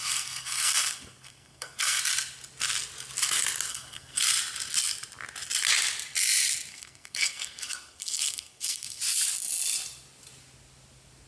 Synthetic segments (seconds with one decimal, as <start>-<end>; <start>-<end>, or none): 0.0-2.0; 3.7-4.2; 6.7-9.0